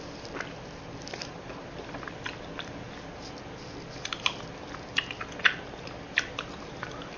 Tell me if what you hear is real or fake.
real